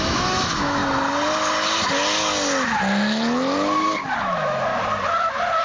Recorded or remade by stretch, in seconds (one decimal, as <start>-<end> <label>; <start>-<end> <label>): 0.0-0.8 remade; 0.8-4.2 recorded; 4.2-4.7 remade; 4.7-5.6 recorded